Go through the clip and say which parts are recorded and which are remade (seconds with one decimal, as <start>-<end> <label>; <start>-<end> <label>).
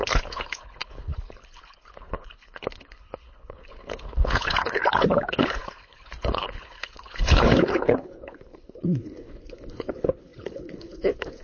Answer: 0.0-11.4 remade